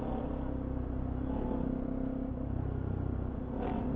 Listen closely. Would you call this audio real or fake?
real